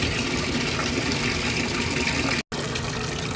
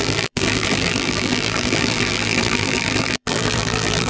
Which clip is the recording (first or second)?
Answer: first